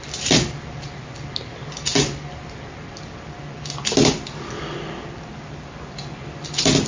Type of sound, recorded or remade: recorded